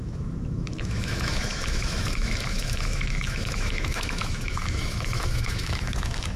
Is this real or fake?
fake